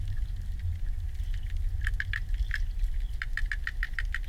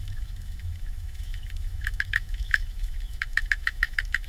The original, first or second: first